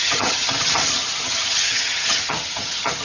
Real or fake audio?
fake